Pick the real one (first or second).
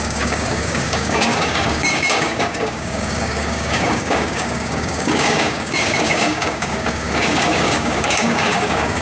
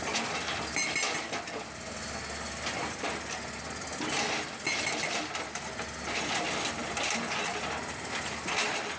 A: second